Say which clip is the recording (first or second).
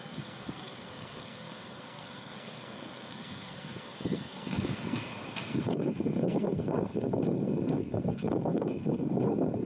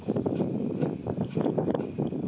second